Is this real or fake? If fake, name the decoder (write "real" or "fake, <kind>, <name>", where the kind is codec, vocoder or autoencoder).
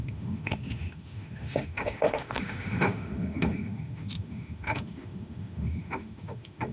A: fake, autoencoder, DAC-VAE